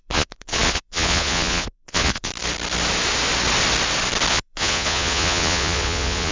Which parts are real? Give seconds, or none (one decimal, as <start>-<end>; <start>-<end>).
2.3-4.3